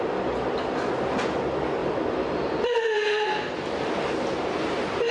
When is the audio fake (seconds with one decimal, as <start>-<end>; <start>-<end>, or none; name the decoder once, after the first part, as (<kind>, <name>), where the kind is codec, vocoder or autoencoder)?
1.8-3.9 (vocoder, BigVGAN v2)